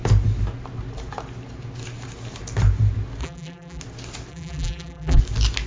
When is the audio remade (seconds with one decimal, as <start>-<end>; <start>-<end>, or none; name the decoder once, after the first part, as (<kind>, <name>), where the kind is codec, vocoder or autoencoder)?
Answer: 3.2-3.8 (vocoder, BigVGAN v2); 4.3-5.2